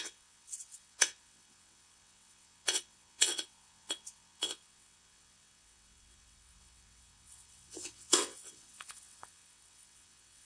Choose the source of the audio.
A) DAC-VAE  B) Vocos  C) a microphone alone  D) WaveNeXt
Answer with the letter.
D